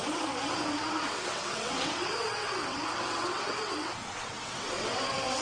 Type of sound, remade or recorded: remade